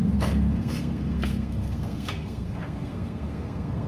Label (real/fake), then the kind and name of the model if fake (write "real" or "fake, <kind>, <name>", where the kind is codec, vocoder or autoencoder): fake, codec, SNAC